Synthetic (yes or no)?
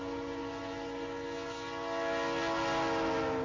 no